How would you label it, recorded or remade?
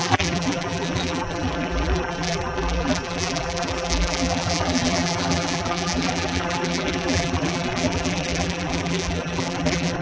remade